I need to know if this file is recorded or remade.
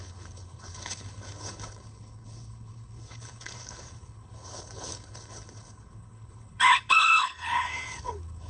remade